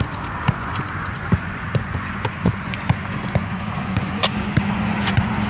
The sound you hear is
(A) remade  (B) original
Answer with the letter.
A